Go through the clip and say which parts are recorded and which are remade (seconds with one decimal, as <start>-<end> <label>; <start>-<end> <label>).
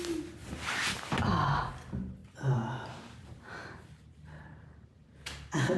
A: 0.0-0.4 recorded; 0.4-1.7 remade; 1.7-2.2 recorded; 2.2-5.8 remade